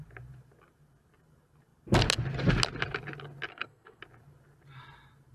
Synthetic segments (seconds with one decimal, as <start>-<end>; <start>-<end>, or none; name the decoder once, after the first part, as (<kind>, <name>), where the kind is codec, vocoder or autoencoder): 3.5-4.0 (codec, SNAC)